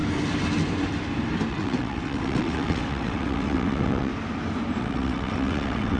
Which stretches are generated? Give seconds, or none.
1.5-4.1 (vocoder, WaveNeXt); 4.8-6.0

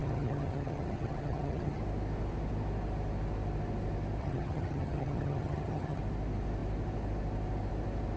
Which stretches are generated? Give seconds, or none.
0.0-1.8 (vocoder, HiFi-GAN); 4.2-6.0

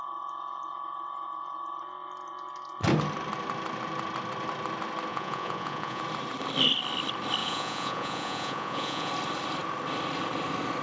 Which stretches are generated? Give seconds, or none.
5.1-6.0 (vocoder, Vocos); 7.4-9.1

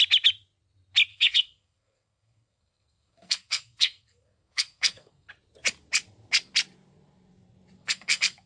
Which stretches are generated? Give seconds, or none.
1.1-5.3 (codec, SNAC); 7.8-8.5

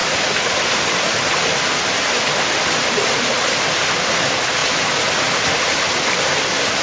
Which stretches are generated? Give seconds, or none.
none

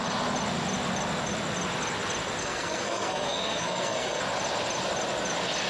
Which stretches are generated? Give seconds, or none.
2.4-4.2 (codec, SNAC)